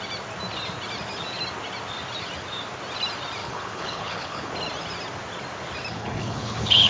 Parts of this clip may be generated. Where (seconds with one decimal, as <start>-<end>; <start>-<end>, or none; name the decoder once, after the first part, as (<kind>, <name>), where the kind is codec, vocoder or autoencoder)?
3.4-4.5 (codec, HILCodec); 5.9-6.9